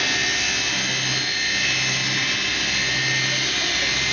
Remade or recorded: recorded